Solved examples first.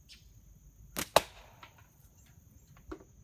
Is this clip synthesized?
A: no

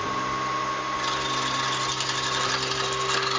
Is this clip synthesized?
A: yes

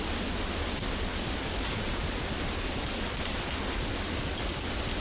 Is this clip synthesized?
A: no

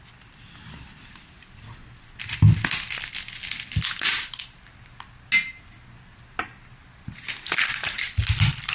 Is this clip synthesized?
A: no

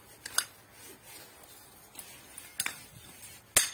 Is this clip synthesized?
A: no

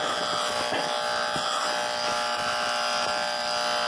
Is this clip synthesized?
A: no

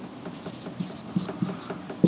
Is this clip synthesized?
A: no